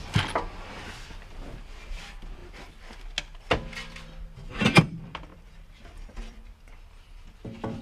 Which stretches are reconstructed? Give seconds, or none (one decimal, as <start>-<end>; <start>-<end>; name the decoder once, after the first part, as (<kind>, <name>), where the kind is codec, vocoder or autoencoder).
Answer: 5.3-6.4 (vocoder, BigVGAN v2)